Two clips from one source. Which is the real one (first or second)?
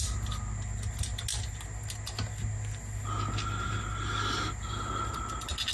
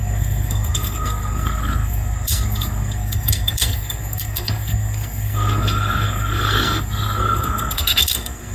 first